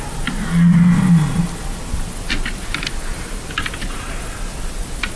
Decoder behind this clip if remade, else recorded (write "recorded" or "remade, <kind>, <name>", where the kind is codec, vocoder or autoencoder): recorded